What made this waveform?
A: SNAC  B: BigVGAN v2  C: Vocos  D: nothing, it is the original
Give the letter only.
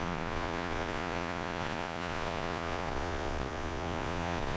C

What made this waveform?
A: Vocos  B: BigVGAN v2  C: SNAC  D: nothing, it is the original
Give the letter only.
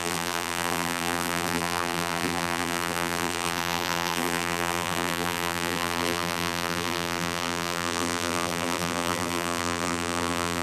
B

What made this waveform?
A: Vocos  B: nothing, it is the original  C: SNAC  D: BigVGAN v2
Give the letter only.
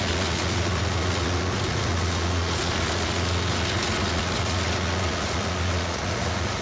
A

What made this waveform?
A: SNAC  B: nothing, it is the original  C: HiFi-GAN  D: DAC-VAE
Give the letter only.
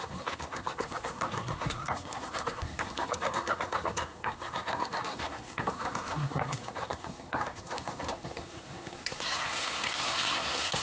A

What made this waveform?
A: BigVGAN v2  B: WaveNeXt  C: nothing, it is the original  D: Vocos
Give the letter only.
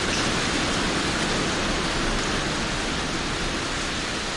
C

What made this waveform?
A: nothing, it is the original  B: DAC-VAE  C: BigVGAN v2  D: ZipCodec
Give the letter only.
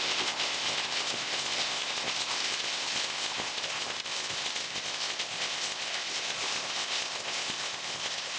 D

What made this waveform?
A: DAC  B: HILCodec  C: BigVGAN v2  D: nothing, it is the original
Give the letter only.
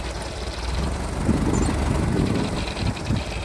D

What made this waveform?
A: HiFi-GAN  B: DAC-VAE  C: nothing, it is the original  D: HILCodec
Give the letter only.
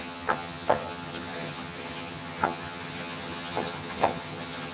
A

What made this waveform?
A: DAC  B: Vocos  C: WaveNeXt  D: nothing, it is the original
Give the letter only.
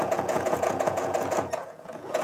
B